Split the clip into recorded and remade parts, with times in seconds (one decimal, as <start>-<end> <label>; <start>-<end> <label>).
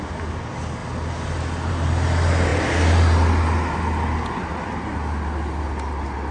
0.0-6.3 recorded